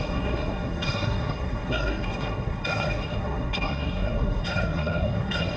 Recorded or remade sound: remade